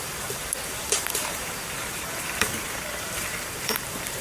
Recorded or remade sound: remade